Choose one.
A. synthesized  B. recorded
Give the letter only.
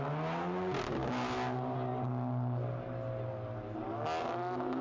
B